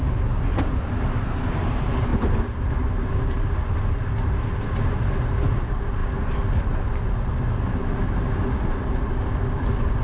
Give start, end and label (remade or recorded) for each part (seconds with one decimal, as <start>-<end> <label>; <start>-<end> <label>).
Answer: 0.0-10.0 recorded